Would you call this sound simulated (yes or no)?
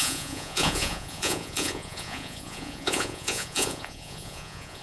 yes